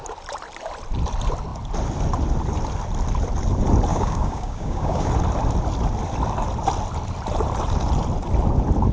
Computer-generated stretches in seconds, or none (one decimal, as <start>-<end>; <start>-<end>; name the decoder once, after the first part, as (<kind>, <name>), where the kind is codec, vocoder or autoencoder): 3.9-5.1 (codec, DAC)

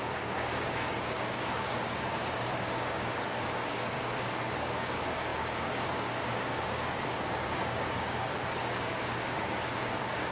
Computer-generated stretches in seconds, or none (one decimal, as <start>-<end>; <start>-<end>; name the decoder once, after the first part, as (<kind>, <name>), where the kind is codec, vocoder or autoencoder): 0.0-10.3 (codec, DAC)